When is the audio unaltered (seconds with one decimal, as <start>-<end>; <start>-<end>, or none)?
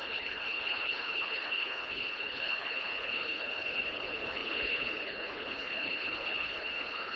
none